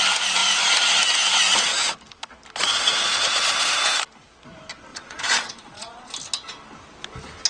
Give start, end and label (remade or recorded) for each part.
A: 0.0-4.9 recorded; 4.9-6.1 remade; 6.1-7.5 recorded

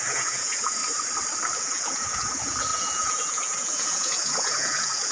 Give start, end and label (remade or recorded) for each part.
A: 0.0-0.8 remade; 0.8-1.6 recorded; 1.6-5.1 remade

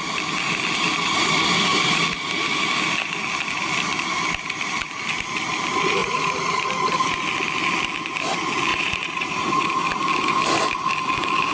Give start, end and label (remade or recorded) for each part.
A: 0.0-6.0 recorded; 6.0-6.6 remade; 6.6-8.7 recorded; 8.7-9.7 remade; 9.7-11.5 recorded

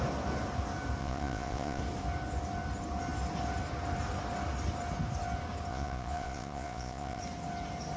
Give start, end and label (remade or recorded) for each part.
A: 0.0-1.0 recorded; 1.0-1.8 remade; 1.8-5.7 recorded; 5.7-7.2 remade; 7.2-8.0 recorded

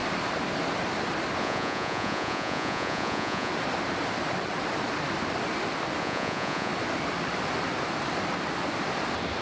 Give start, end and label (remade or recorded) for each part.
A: 0.0-1.4 recorded; 1.4-3.5 remade; 3.5-6.0 recorded; 6.0-6.7 remade; 6.7-9.4 recorded

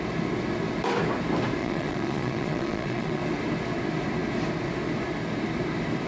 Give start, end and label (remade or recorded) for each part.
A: 0.0-1.6 recorded; 1.6-3.2 remade; 3.2-6.1 recorded

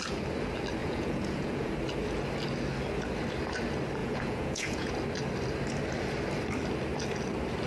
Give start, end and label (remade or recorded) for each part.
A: 0.0-0.8 recorded; 0.8-1.7 remade; 1.7-4.0 recorded; 4.0-4.9 remade; 4.9-7.7 recorded

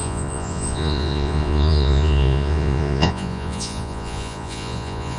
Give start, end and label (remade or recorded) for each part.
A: 0.0-5.2 remade